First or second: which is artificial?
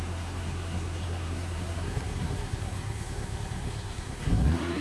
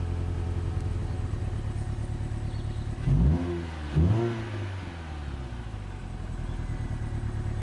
first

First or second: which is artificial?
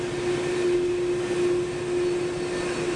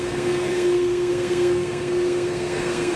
second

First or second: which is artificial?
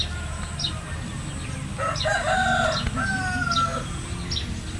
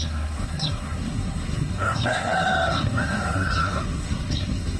second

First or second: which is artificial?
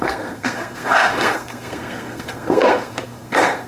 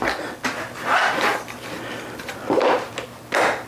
first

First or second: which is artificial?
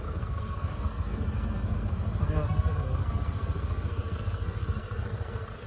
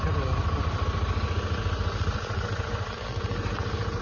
first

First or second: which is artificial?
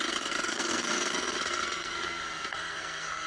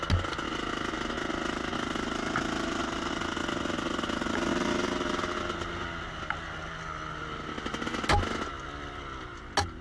first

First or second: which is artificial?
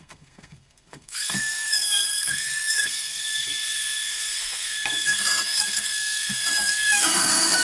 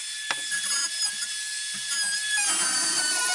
first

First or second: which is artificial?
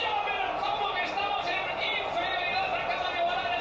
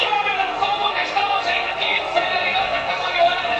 second